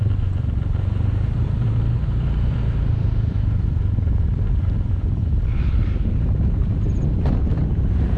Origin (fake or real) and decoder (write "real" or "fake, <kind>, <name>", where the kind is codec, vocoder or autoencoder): fake, vocoder, BigVGAN v2